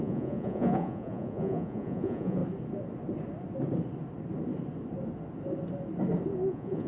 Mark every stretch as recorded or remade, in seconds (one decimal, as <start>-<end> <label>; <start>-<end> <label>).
0.0-2.4 remade; 2.4-6.5 recorded; 6.5-6.9 remade